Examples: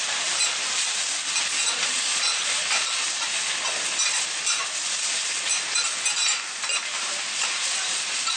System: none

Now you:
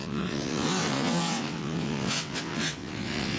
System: vocoder, WaveNeXt